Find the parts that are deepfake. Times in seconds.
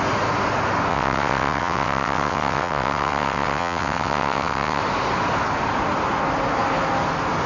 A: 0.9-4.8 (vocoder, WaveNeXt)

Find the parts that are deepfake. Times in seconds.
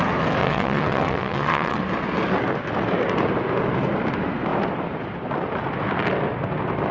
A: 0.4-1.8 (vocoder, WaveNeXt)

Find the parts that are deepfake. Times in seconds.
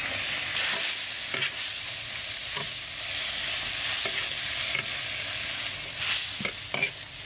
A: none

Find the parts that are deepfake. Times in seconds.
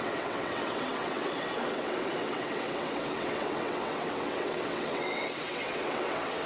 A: 0.0-6.5 (vocoder, WaveNeXt)